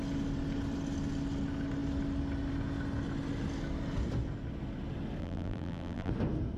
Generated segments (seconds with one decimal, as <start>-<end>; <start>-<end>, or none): 5.2-6.1